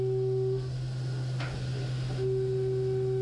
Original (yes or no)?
yes